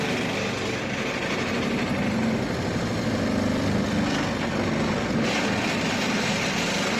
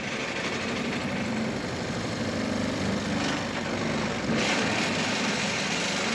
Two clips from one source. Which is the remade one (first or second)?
second